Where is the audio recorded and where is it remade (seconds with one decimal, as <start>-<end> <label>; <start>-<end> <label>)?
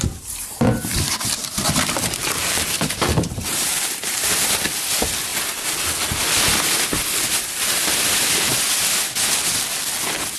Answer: 0.0-2.2 recorded; 2.2-4.2 remade; 4.2-10.4 recorded